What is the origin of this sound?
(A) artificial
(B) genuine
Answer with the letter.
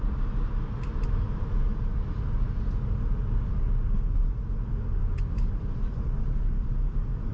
B